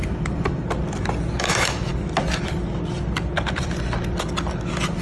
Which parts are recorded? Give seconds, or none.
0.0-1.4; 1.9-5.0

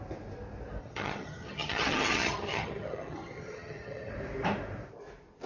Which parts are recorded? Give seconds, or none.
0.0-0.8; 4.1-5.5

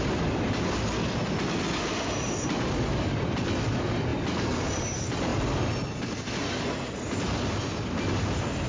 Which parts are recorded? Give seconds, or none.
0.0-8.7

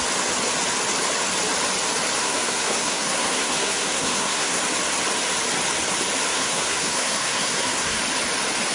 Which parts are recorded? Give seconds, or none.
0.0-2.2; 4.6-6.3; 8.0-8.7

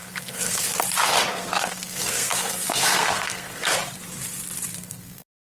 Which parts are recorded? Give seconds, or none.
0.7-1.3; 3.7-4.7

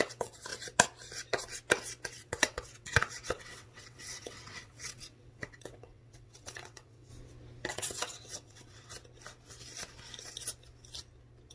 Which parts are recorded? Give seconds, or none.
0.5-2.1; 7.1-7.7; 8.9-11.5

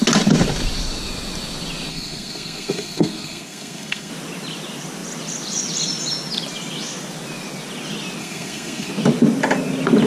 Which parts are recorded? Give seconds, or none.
0.0-1.9; 4.1-8.2; 8.9-10.1